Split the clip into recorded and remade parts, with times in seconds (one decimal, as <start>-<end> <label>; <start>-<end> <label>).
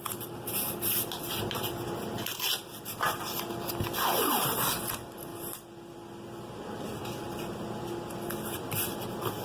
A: 0.0-9.4 recorded